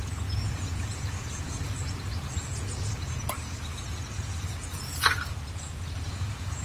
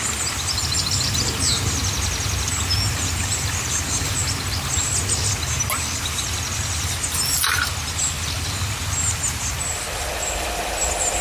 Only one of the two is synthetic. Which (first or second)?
first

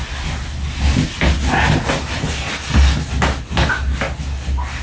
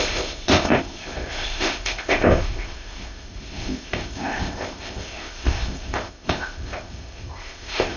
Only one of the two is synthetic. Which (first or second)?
second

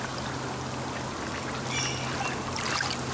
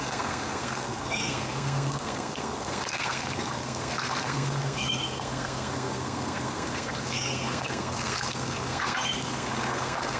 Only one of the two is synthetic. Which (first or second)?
second